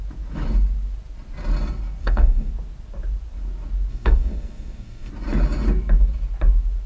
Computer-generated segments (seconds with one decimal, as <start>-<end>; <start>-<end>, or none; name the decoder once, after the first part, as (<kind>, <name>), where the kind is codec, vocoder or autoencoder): 2.0-2.5 (codec, SNAC); 3.9-5.1